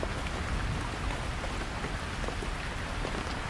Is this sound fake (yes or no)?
no